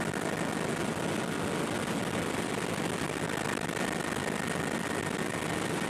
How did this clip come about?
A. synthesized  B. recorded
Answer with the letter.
B